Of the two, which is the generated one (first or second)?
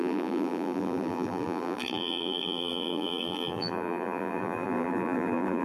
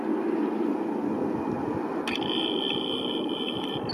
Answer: first